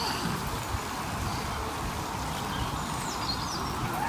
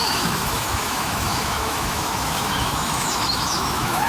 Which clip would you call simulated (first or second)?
second